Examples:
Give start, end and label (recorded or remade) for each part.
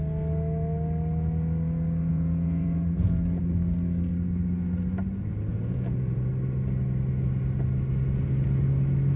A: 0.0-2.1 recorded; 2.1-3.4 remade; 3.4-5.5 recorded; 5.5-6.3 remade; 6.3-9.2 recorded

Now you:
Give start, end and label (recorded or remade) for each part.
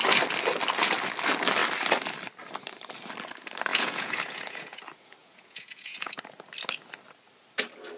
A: 0.0-3.7 recorded; 3.7-4.8 remade; 4.8-5.2 recorded; 5.2-6.2 remade; 6.2-8.0 recorded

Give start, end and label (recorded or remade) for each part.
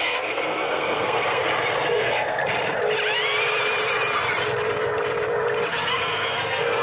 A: 0.0-1.4 remade; 1.4-1.9 recorded; 1.9-2.4 remade; 2.4-5.7 recorded; 5.7-6.8 remade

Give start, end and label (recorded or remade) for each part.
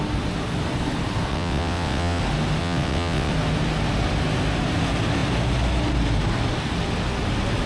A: 0.0-1.3 recorded; 1.3-2.2 remade; 2.2-2.6 recorded; 2.6-3.3 remade; 3.3-7.7 recorded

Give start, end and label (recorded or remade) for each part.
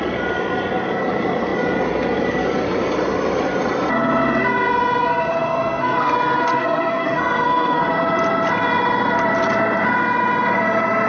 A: 0.0-5.5 recorded; 5.5-6.1 remade; 6.1-6.5 recorded; 6.5-7.8 remade; 7.8-11.1 recorded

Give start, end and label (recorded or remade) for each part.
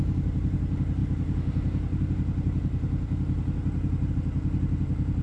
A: 0.0-5.2 recorded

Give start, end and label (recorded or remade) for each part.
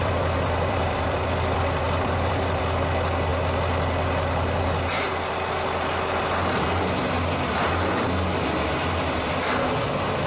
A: 0.0-2.6 remade; 2.6-10.3 recorded